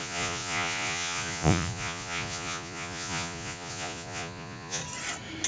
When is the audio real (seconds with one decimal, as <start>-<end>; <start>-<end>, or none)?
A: 4.8-5.5